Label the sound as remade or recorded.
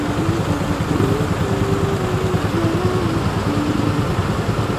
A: recorded